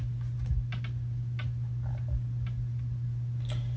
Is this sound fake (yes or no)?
no